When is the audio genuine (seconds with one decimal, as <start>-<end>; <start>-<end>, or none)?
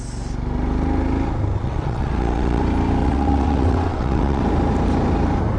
0.0-1.6; 2.6-3.0; 4.4-5.6